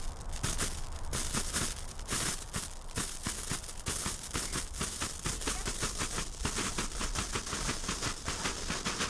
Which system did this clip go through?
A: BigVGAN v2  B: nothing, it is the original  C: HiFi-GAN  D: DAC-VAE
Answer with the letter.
B